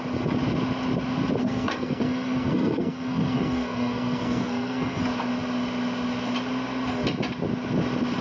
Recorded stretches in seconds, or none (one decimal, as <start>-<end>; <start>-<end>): 0.0-1.4; 5.0-8.2